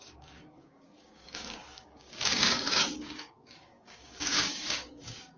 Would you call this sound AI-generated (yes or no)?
yes